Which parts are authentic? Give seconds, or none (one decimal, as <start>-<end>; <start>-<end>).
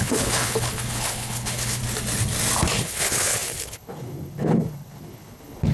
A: 1.8-2.7